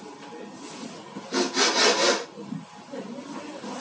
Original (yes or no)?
yes